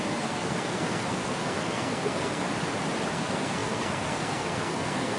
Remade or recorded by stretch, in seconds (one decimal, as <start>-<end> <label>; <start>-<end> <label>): 0.0-2.5 remade; 2.5-3.1 recorded; 3.1-5.2 remade